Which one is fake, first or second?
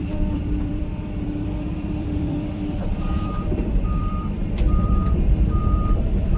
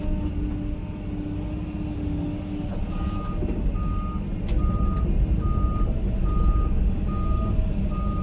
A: first